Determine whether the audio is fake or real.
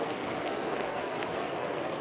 fake